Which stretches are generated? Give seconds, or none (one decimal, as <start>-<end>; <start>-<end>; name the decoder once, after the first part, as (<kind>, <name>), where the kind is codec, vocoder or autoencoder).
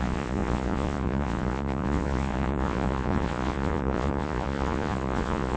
0.0-5.6 (vocoder, Vocos)